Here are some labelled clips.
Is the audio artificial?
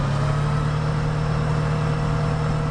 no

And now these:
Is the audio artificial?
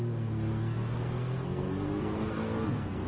yes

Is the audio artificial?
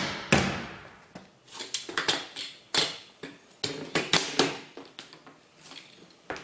no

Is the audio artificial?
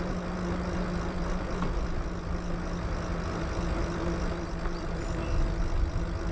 no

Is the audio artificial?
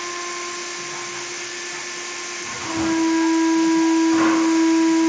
no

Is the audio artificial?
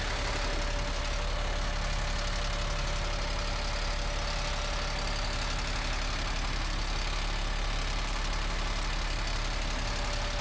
no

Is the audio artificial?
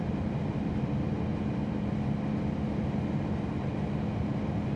no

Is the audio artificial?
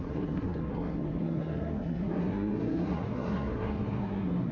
yes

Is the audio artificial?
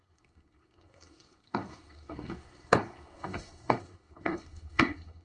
yes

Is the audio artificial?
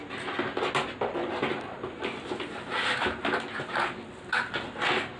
no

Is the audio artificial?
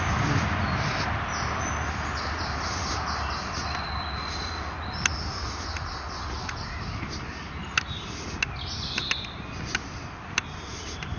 no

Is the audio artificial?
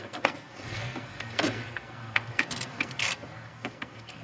yes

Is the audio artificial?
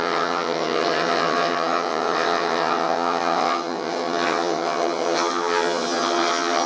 yes